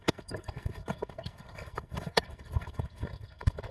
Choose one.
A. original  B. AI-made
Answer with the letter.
B